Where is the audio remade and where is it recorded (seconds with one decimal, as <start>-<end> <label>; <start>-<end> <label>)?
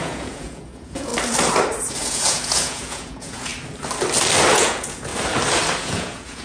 0.0-1.1 remade; 1.1-1.9 recorded; 1.9-3.5 remade; 3.5-4.5 recorded; 4.5-5.1 remade; 5.1-5.8 recorded; 5.8-6.4 remade